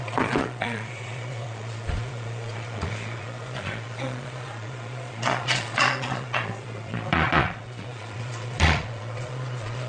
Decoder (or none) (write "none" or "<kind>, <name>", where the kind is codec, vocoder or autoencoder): vocoder, Vocos